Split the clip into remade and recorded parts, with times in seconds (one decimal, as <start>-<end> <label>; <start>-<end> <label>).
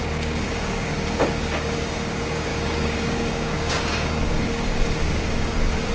0.0-5.9 remade